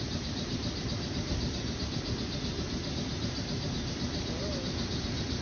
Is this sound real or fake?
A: real